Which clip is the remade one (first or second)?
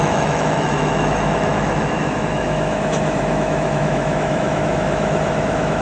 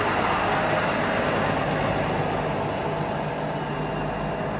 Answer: first